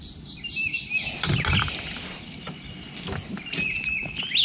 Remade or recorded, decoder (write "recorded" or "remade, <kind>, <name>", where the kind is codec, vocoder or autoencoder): recorded